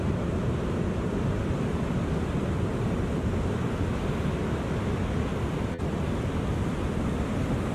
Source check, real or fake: real